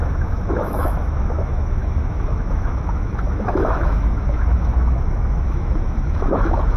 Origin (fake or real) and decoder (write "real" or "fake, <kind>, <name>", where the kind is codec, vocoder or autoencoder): fake, autoencoder, DAC-VAE